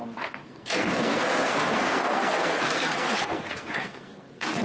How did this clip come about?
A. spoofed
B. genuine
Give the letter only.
A